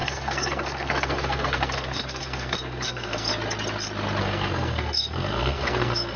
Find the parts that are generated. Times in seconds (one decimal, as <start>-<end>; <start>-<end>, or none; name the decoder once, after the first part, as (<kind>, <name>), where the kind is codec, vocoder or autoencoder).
0.0-3.3 (codec, SNAC); 4.2-6.2